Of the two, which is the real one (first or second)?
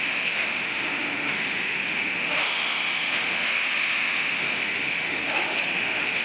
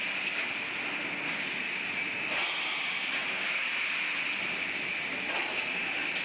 second